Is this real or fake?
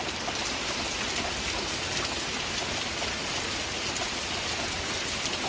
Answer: real